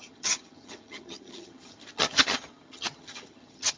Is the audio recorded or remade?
remade